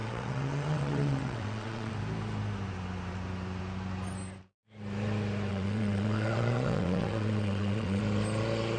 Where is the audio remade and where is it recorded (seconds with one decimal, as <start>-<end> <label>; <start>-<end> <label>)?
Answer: 0.0-1.9 remade; 1.9-5.5 recorded; 5.5-8.0 remade; 8.0-8.8 recorded